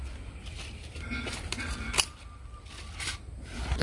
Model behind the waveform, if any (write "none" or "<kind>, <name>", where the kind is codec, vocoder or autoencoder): none